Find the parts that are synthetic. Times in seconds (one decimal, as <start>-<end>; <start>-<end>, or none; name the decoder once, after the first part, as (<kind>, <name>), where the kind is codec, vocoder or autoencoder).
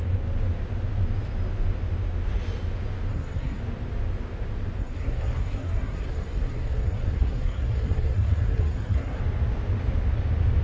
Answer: 3.1-3.6 (codec, SNAC); 4.8-9.2